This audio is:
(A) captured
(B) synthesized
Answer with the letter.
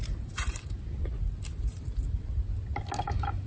A